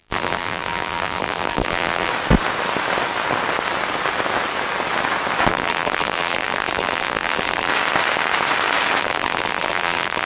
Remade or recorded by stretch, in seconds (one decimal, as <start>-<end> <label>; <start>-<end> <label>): 0.0-2.1 remade; 2.1-5.5 recorded; 5.5-7.7 remade; 7.7-9.0 recorded; 9.0-10.2 remade